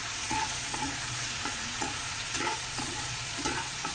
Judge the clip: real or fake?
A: fake